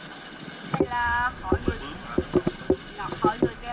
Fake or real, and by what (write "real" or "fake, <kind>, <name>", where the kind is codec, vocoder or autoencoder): real